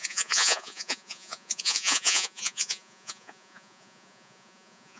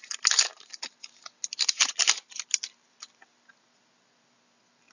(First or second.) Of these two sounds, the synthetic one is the first